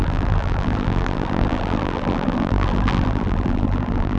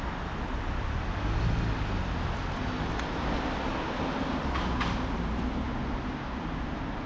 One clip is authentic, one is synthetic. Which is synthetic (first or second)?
first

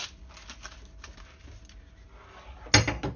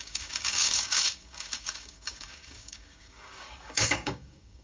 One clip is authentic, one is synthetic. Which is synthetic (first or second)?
second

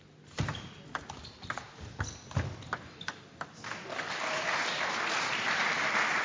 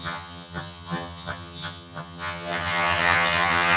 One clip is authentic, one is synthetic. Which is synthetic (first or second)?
second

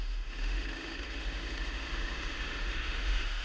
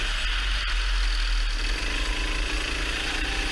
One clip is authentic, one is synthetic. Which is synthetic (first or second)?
first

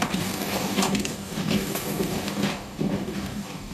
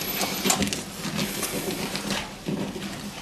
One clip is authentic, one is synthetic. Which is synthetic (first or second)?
first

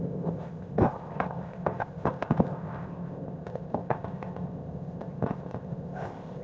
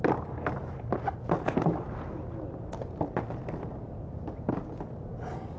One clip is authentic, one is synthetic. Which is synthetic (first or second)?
first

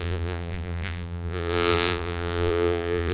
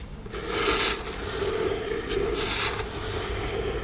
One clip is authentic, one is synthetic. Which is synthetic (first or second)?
first